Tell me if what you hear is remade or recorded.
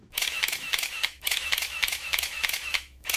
remade